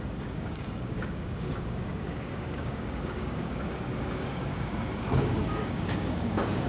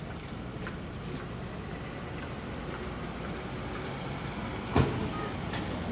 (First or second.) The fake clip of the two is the first